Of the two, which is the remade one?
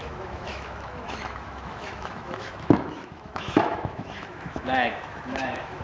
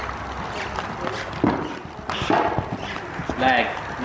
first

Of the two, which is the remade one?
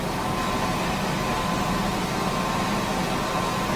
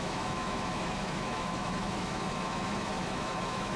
second